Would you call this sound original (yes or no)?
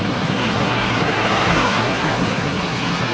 no